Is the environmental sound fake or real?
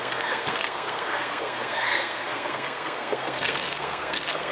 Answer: fake